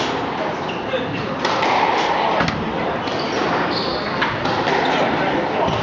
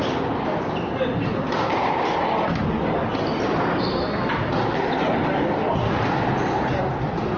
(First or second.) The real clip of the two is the second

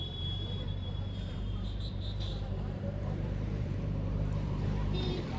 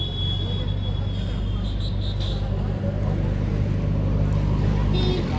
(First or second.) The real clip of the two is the second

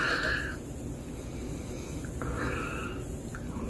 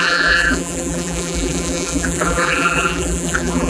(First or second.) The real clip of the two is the first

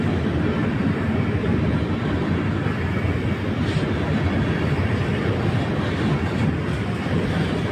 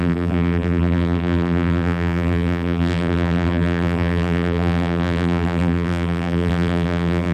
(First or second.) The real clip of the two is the first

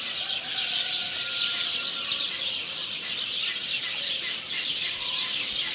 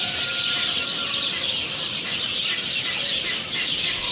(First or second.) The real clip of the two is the second